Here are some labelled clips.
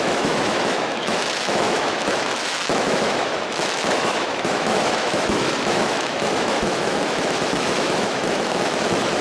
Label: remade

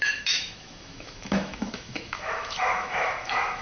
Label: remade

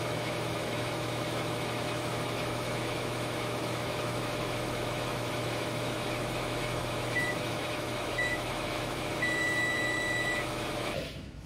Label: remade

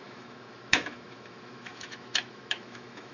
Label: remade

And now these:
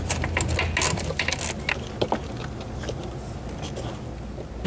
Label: recorded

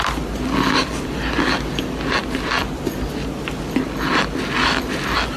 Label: recorded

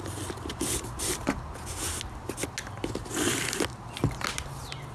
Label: recorded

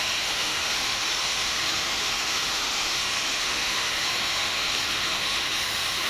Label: remade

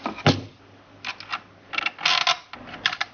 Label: recorded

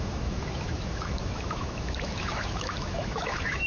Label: remade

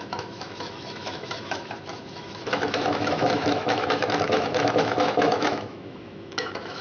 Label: remade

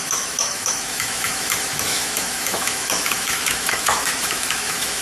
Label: remade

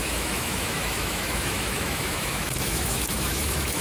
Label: remade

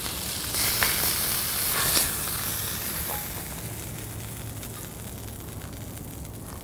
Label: recorded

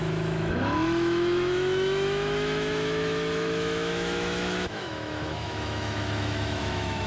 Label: remade